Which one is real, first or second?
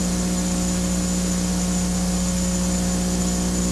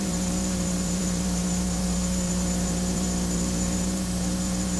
first